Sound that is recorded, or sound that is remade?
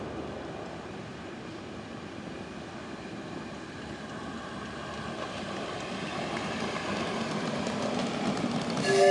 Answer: recorded